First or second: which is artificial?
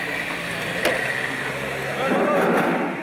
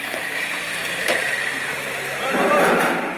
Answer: second